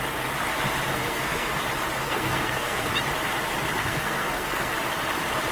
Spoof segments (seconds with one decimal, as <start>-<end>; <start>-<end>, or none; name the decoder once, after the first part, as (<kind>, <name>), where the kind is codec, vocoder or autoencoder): 0.9-1.5 (codec, SNAC); 2.0-2.9; 3.8-4.7